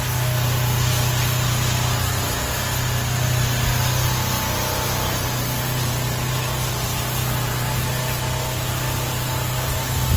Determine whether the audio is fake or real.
real